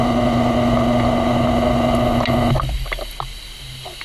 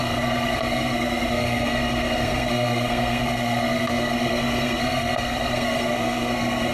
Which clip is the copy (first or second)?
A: second